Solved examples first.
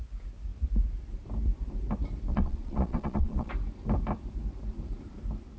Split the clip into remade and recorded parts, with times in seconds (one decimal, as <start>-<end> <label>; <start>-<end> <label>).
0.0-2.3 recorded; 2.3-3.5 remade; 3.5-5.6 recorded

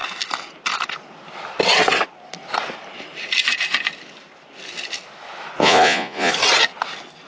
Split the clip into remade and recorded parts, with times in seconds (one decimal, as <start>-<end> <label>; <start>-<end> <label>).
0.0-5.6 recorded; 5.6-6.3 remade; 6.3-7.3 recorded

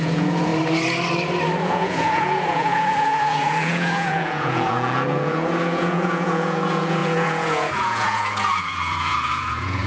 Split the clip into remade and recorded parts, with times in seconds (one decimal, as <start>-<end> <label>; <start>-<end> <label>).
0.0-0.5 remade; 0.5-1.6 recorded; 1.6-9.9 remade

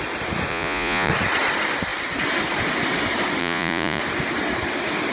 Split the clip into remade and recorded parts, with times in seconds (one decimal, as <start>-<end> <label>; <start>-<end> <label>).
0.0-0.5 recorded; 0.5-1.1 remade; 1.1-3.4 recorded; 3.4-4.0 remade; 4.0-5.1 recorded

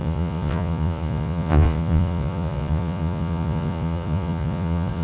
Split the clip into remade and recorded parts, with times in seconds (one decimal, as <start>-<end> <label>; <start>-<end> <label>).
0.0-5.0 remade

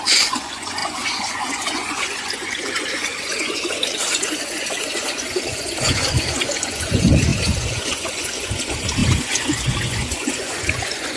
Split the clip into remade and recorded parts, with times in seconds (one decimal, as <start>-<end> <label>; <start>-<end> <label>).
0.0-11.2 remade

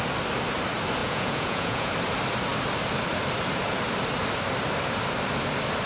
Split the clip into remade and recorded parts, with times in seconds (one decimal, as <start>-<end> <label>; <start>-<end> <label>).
0.0-1.0 recorded; 1.0-1.9 remade; 1.9-5.9 recorded

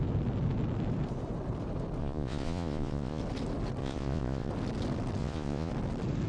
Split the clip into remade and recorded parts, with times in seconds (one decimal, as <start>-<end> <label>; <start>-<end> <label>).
0.0-2.0 recorded; 2.0-3.2 remade; 3.2-3.8 recorded; 3.8-4.5 remade; 4.5-5.2 recorded; 5.2-5.7 remade; 5.7-6.3 recorded